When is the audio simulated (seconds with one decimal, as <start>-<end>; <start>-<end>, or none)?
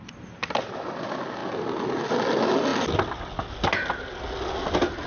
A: none